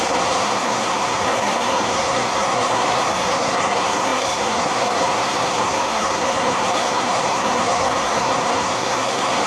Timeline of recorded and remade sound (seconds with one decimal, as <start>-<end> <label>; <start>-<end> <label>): 0.0-9.5 remade